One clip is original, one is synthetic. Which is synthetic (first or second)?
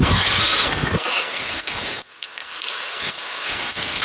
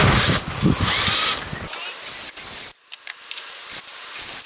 first